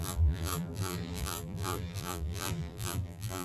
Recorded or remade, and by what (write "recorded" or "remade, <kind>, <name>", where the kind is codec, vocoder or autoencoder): remade, vocoder, BigVGAN v2